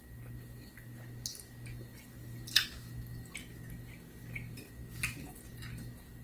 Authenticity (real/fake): real